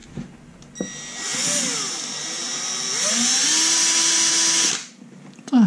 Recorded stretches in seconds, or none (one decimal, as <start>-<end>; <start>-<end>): 0.0-5.7